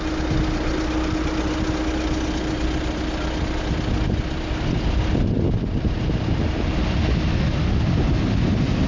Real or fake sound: real